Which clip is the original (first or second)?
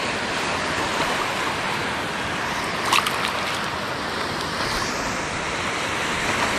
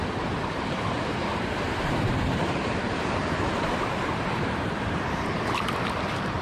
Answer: first